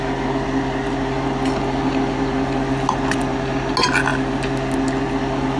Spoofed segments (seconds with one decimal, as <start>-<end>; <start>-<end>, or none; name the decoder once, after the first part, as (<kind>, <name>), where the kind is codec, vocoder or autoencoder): none